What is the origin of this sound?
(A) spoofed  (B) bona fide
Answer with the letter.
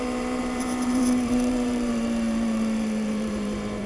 A